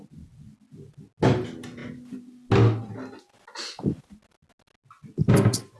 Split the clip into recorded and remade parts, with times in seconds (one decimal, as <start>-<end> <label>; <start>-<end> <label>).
0.0-5.8 recorded